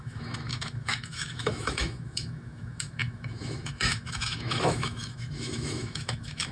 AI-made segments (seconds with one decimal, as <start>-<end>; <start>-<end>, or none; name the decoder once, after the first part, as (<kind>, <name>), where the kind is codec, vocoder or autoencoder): 0.0-6.5 (autoencoder, DAC-VAE)